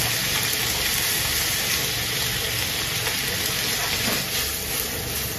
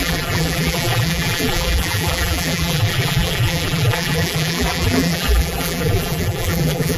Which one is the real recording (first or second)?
first